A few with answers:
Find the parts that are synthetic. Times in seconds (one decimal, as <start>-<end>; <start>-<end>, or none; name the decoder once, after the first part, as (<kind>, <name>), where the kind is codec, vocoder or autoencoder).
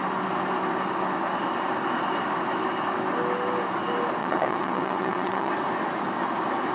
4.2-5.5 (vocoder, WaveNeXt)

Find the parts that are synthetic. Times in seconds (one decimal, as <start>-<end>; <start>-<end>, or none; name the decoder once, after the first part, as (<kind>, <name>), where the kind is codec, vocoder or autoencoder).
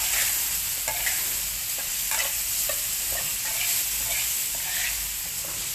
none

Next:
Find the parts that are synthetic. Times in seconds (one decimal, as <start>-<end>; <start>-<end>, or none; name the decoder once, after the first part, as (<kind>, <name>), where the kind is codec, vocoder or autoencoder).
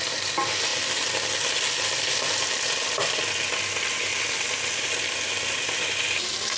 none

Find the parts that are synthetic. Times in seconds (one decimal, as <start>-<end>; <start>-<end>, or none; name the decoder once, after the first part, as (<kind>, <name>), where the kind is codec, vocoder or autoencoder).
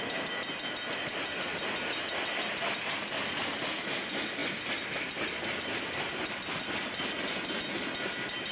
none